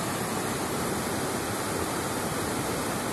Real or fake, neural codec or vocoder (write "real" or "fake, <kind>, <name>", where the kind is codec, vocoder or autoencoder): real